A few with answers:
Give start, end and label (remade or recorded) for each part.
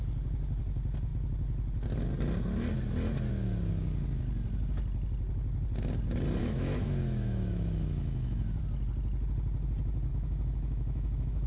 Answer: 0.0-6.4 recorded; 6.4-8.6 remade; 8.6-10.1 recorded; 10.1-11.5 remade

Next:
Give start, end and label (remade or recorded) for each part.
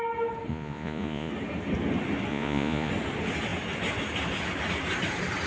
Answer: 0.0-0.5 recorded; 0.5-1.3 remade; 1.3-2.3 recorded; 2.3-2.9 remade; 2.9-5.5 recorded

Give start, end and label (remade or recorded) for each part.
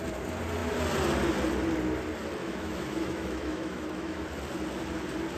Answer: 0.0-2.4 recorded; 2.4-4.2 remade; 4.2-5.4 recorded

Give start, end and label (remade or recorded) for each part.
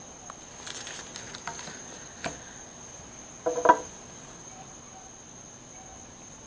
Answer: 0.0-6.5 recorded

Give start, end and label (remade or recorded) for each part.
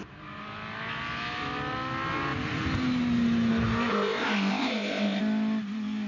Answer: 0.0-3.9 recorded; 3.9-5.2 remade; 5.2-6.1 recorded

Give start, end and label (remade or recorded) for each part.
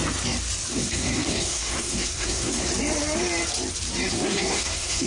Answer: 0.0-0.7 recorded; 0.7-2.7 remade; 2.7-4.1 recorded; 4.1-5.1 remade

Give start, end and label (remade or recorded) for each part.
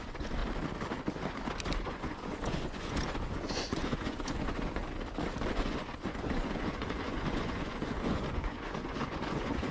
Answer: 0.0-0.4 remade; 0.4-1.8 recorded; 1.8-4.8 remade; 4.8-5.5 recorded; 5.5-9.7 remade